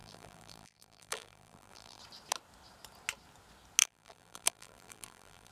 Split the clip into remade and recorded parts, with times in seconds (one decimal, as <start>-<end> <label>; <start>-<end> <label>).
0.0-2.0 remade; 2.0-3.8 recorded; 3.8-5.5 remade